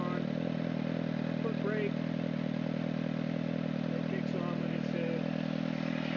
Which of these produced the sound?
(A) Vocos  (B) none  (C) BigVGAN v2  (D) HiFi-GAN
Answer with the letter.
B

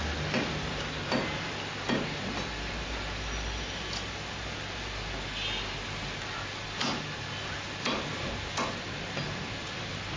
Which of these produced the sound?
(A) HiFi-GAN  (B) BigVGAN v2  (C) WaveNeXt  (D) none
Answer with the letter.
D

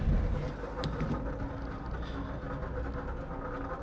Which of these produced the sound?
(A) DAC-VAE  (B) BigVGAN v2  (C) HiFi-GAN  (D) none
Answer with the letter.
D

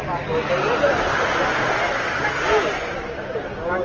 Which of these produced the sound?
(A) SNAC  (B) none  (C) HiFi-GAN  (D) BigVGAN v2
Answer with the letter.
B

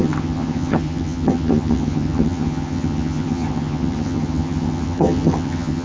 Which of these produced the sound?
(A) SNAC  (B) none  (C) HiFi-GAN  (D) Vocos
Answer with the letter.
C